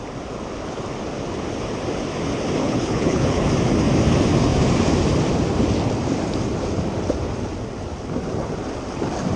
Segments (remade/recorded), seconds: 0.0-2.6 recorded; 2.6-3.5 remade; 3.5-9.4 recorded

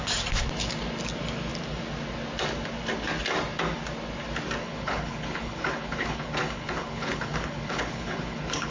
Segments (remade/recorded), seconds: 0.0-4.6 recorded; 4.6-8.7 remade

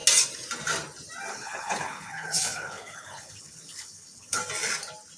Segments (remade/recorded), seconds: 0.0-1.3 recorded; 1.3-4.4 remade; 4.4-5.2 recorded

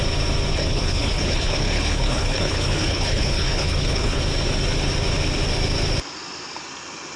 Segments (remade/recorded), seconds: 0.0-0.5 recorded; 0.5-4.2 remade; 4.2-7.2 recorded

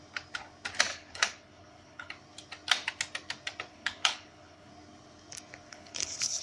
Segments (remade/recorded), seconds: 0.0-0.9 recorded; 0.9-2.1 remade; 2.1-3.7 recorded; 3.7-4.7 remade; 4.7-5.7 recorded; 5.7-6.4 remade

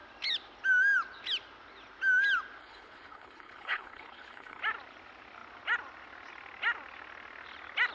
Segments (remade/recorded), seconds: 0.0-2.6 recorded; 2.6-4.6 remade; 4.6-7.9 recorded

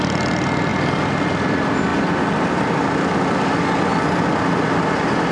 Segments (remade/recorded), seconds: 0.0-5.3 recorded